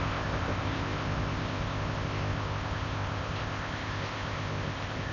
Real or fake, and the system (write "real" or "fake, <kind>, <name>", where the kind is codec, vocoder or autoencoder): fake, codec, ZipCodec